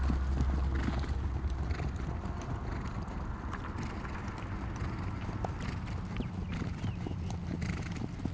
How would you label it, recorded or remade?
recorded